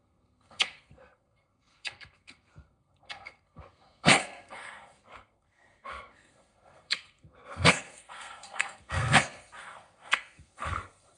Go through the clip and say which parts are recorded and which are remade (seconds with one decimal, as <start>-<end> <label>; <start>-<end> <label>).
0.0-11.2 remade